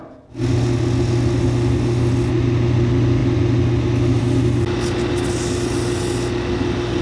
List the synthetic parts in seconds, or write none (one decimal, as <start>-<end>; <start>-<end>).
none